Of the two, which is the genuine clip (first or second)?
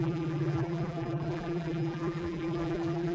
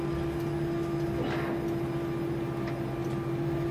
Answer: second